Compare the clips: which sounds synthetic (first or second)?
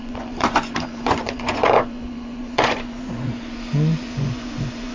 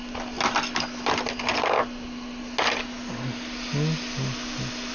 first